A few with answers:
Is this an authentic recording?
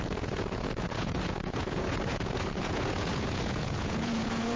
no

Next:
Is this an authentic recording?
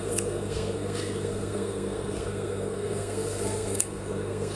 no